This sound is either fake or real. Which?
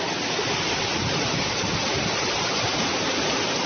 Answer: real